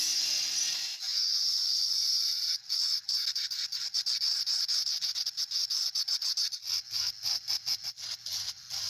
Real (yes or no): yes